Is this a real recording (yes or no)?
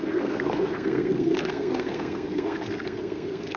no